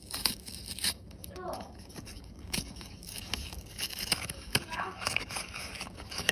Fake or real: fake